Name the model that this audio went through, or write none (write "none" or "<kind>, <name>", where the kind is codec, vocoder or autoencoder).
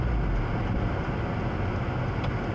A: none